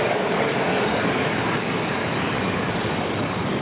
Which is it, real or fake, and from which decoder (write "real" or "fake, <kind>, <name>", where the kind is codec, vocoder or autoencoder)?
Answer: fake, codec, DAC